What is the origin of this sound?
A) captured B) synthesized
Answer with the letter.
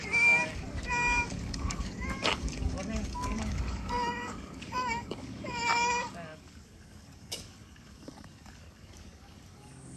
B